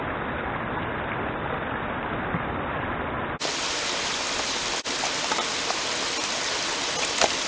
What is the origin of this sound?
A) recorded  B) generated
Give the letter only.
A